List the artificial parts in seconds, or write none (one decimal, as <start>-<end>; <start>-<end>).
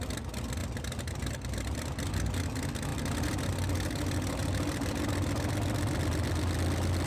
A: 0.6-2.1; 2.9-3.5; 4.4-5.0